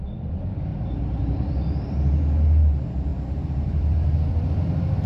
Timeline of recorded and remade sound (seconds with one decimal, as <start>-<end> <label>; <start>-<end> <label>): 0.0-0.7 recorded; 0.7-2.2 remade; 2.2-3.1 recorded; 3.1-4.6 remade; 4.6-5.1 recorded